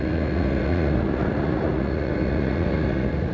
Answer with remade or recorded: remade